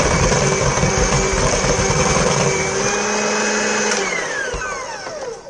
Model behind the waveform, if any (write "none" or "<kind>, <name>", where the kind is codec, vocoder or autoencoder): none